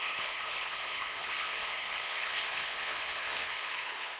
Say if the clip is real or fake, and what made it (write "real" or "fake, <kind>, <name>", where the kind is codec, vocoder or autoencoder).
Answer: fake, codec, HILCodec